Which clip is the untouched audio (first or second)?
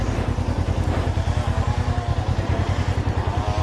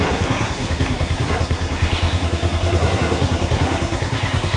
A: first